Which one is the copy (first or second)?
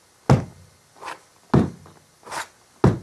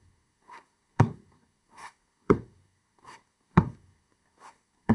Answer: second